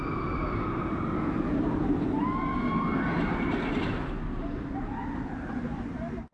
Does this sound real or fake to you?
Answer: real